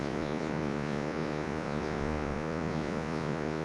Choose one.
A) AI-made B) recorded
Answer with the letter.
A